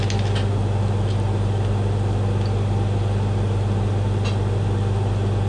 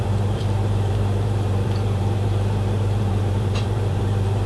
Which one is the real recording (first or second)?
first